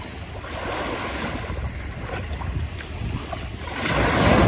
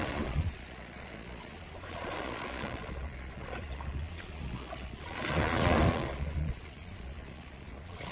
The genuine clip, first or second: first